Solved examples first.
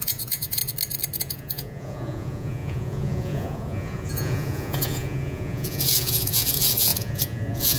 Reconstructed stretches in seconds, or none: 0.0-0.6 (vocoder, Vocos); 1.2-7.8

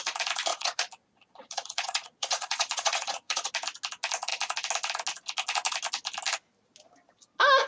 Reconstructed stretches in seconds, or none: 0.5-3.5 (vocoder, Vocos)

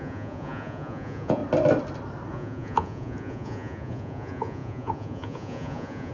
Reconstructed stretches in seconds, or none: 0.0-1.4 (vocoder, Vocos); 2.3-6.1